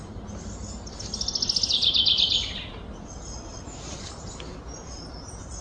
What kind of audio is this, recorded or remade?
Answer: recorded